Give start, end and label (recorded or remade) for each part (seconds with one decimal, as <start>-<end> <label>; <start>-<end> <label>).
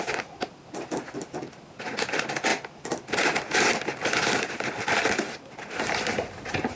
0.0-6.8 recorded